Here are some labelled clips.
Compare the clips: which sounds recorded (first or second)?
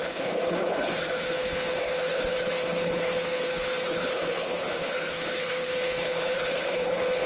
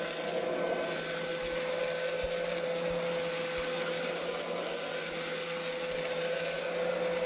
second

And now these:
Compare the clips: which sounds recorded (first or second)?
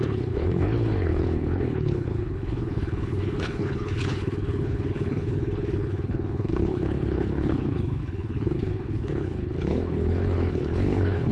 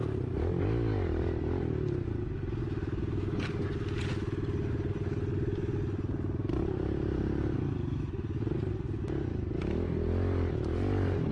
second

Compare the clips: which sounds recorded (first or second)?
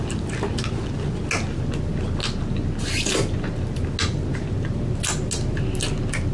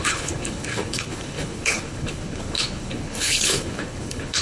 first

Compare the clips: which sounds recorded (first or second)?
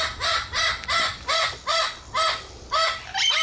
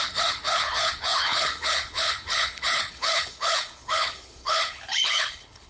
first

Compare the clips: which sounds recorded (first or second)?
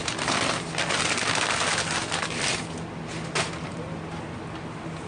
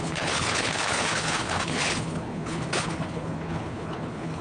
first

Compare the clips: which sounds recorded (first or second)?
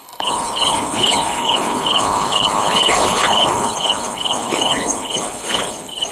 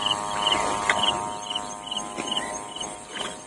second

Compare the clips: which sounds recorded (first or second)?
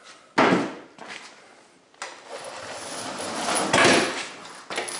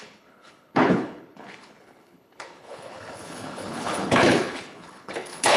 first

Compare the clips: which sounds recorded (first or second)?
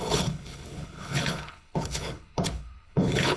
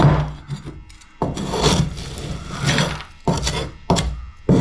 second